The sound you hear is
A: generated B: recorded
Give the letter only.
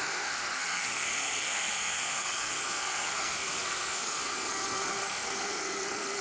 A